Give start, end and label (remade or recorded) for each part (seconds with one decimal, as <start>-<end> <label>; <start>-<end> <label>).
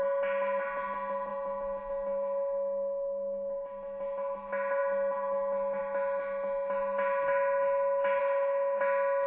0.0-8.2 recorded; 8.2-8.8 remade; 8.8-9.3 recorded